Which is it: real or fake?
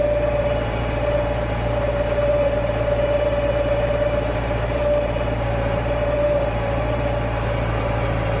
fake